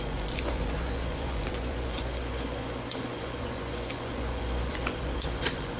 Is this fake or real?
fake